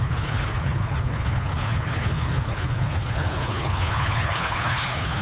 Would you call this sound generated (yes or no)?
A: yes